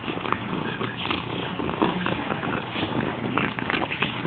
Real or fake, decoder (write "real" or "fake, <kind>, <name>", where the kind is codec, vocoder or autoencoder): fake, codec, DAC